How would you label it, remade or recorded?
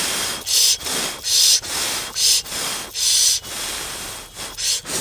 recorded